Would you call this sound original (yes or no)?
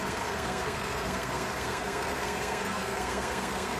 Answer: no